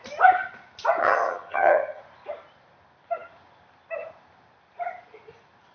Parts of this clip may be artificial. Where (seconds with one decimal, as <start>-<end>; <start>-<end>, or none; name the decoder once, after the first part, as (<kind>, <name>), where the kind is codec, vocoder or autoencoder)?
1.0-2.0 (vocoder, HiFi-GAN)